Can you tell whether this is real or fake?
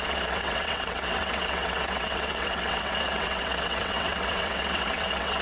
fake